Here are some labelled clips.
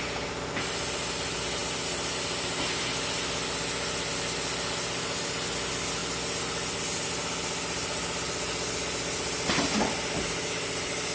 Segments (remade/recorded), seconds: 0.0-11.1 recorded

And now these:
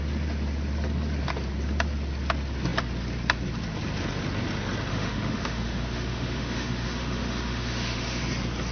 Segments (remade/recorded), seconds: 0.0-4.9 recorded; 4.9-8.2 remade; 8.2-8.7 recorded